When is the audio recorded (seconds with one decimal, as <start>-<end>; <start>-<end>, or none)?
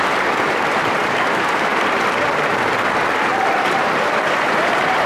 0.0-1.0; 2.5-3.3